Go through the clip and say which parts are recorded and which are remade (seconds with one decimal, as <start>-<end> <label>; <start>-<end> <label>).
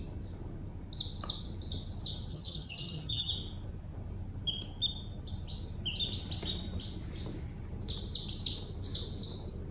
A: 0.0-2.3 recorded; 2.3-3.3 remade; 3.3-9.7 recorded